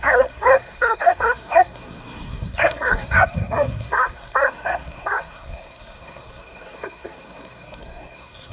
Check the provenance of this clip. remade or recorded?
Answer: remade